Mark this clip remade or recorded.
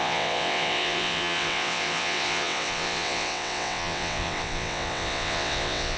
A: remade